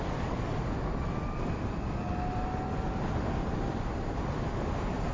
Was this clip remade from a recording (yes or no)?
no